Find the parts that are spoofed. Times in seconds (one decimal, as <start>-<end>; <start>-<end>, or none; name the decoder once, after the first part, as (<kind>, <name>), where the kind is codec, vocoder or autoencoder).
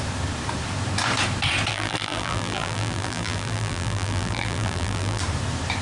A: 1.7-5.2 (vocoder, BigVGAN v2)